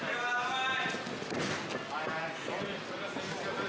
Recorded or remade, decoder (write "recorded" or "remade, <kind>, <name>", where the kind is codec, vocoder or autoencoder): recorded